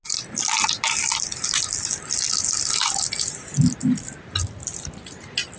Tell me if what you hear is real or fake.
real